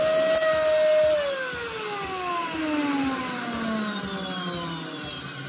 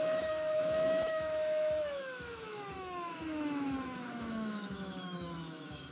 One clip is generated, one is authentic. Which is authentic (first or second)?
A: first